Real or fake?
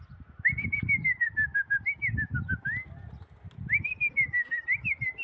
real